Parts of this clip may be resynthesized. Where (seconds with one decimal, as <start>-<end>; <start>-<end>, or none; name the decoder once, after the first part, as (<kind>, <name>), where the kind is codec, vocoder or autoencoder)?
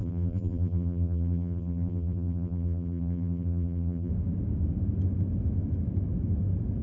0.0-4.1 (vocoder, BigVGAN v2)